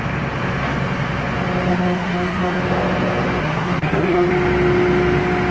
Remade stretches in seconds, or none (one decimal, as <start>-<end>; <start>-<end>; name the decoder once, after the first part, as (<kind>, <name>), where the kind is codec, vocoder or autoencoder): 1.7-2.6 (codec, SNAC); 3.4-4.3

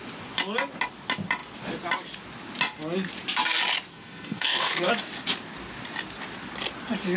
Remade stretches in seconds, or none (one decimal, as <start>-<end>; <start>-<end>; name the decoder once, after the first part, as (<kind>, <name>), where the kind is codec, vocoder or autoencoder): 3.9-4.9 (codec, SNAC)

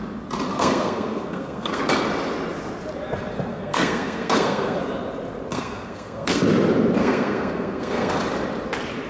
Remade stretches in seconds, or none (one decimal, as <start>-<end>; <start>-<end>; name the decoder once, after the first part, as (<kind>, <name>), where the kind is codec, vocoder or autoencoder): 0.5-1.8 (codec, SNAC); 3.5-4.8; 5.5-6.4; 7.0-8.2